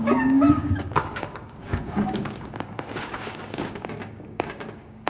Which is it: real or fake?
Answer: fake